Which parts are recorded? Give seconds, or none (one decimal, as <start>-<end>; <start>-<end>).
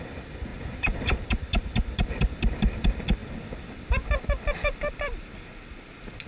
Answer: 0.0-0.5; 2.5-3.2; 5.3-6.3